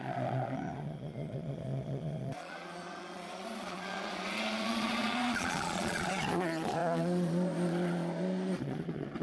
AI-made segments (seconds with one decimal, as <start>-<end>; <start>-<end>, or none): 0.0-9.2